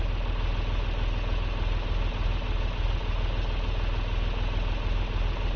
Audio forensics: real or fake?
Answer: real